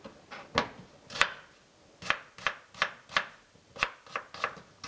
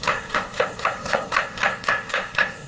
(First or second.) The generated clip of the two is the second